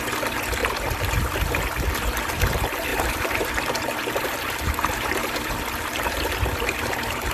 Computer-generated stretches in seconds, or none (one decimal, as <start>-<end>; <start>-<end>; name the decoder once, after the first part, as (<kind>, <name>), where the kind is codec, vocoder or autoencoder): 2.9-3.5 (vocoder, BigVGAN v2); 4.0-5.5